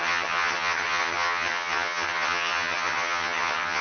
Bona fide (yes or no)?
no